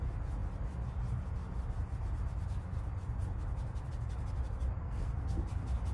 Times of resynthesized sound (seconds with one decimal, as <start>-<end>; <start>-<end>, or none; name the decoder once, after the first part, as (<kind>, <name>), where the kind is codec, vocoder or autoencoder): 4.8-5.4 (codec, SNAC)